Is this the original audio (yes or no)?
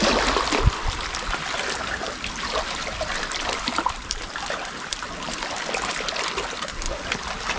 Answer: yes